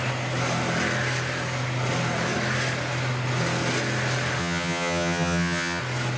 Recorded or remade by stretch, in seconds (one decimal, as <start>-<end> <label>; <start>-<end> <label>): 0.0-4.4 recorded; 4.4-5.8 remade; 5.8-6.2 recorded